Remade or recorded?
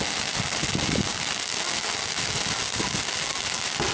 recorded